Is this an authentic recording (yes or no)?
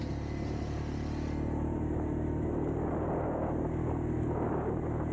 yes